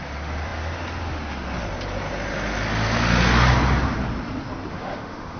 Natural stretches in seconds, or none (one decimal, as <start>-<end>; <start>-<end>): 0.0-4.7